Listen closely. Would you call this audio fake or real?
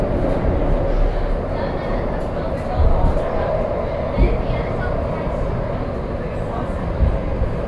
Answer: real